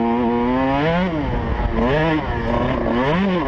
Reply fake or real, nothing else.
real